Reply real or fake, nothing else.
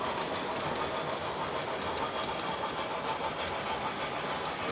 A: real